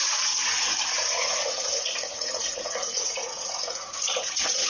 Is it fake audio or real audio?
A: fake